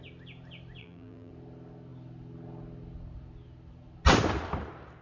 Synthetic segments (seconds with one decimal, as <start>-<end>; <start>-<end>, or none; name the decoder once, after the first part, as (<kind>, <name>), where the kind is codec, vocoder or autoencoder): 0.8-1.3 (vocoder, BigVGAN v2)